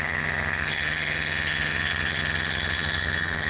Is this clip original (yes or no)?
no